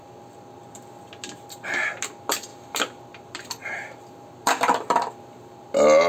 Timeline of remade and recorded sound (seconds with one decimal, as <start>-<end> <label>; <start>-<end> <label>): 0.0-6.1 recorded